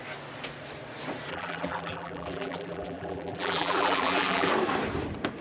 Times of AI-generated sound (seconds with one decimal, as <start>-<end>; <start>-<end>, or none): 1.3-4.5